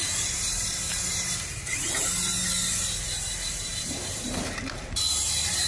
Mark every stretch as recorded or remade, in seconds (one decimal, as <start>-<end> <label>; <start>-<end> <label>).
0.0-2.1 remade; 2.1-2.8 recorded; 2.8-5.7 remade